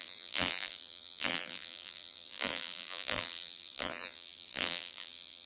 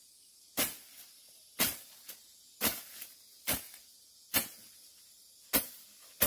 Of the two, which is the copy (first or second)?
first